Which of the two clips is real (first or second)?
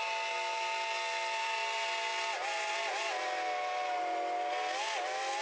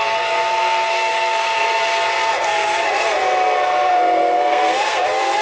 first